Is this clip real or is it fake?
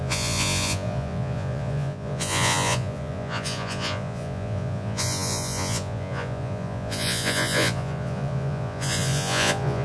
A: fake